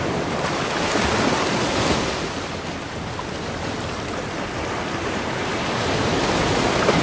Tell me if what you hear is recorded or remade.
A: recorded